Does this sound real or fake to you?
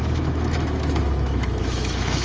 fake